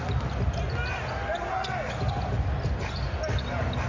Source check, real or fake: real